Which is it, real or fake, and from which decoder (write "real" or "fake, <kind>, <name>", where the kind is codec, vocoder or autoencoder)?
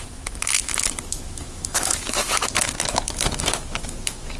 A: fake, autoencoder, DAC-VAE